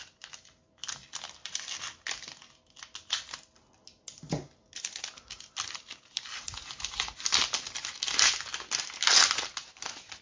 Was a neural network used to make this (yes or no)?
no